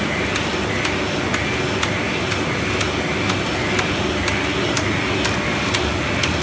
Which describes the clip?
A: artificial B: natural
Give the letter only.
B